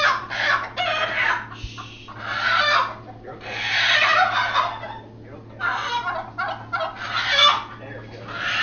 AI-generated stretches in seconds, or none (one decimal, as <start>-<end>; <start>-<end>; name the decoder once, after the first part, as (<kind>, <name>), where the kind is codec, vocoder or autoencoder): none